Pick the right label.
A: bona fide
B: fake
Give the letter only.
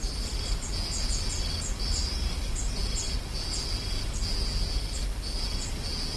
A